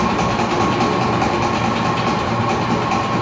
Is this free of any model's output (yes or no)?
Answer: yes